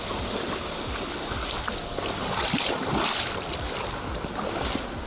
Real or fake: real